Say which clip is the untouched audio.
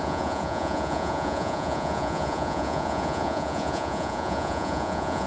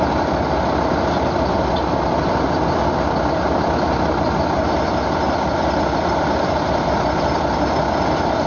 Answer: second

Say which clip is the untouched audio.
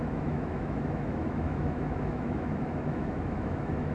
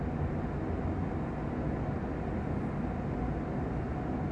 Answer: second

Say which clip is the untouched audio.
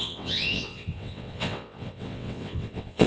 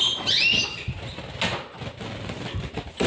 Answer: second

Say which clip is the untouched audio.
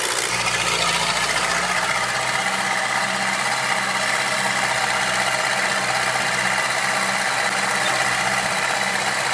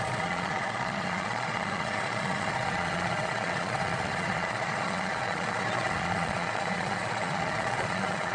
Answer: first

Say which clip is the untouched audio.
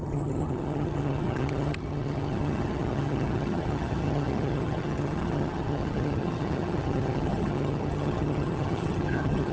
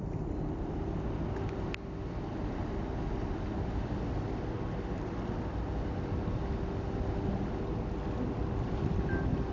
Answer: second